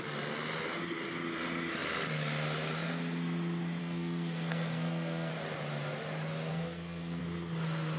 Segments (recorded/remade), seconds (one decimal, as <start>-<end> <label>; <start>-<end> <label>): 0.0-3.8 recorded; 3.8-5.3 remade; 5.3-6.5 recorded; 6.5-7.2 remade; 7.2-8.0 recorded